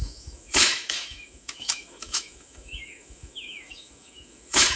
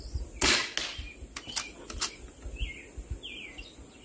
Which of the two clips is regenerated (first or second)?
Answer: first